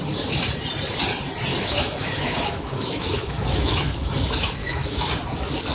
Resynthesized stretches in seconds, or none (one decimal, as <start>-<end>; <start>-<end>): 1.5-4.1; 4.6-5.1